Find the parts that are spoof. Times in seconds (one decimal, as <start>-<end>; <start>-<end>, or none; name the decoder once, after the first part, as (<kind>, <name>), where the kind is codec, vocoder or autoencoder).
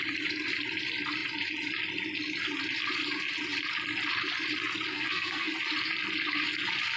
4.9-5.5 (codec, SNAC)